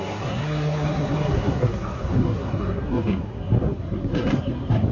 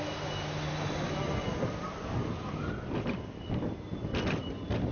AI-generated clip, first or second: first